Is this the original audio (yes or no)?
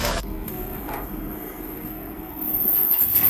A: no